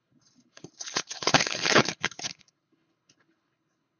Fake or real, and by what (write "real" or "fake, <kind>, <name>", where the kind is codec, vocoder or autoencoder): fake, codec, HILCodec